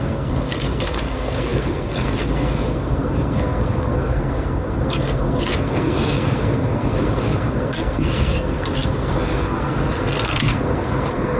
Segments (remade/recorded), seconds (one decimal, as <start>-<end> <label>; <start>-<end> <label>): 0.0-11.4 remade